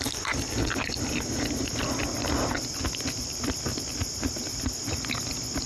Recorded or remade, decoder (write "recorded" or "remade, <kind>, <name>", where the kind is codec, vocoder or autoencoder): recorded